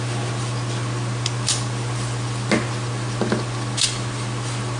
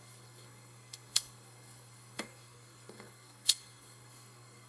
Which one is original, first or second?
first